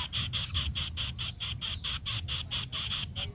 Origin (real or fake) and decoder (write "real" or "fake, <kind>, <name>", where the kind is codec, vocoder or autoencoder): real